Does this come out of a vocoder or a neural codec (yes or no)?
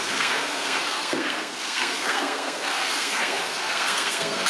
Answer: yes